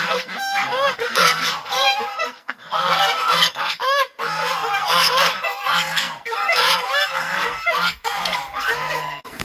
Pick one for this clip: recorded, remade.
remade